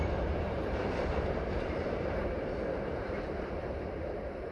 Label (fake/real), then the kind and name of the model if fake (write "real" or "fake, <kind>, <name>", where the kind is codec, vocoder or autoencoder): fake, vocoder, BigVGAN v2